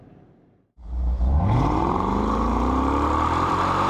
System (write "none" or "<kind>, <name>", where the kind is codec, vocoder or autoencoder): vocoder, BigVGAN v2